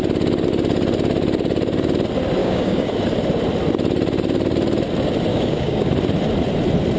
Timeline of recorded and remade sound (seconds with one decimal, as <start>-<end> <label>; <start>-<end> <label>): 0.0-2.4 recorded; 2.4-2.9 remade; 2.9-5.3 recorded; 5.3-5.9 remade; 5.9-7.0 recorded